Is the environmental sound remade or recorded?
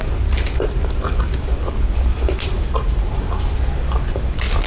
recorded